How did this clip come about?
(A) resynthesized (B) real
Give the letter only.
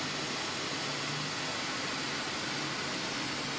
B